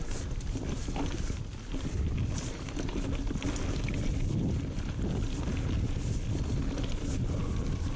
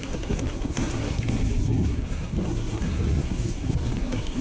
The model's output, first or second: second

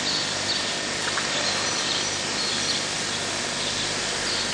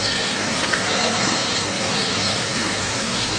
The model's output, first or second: second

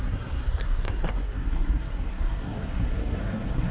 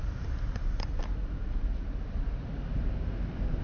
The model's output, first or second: first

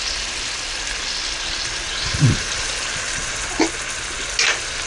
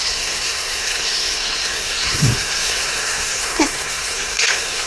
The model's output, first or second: second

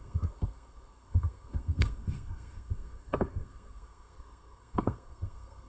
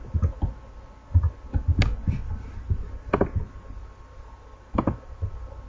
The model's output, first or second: first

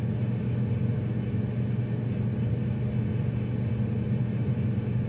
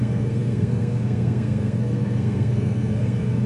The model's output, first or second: second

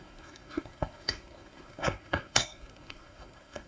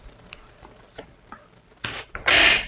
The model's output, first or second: first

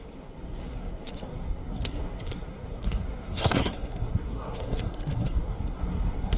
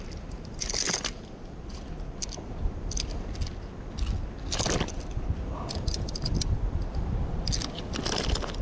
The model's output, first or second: first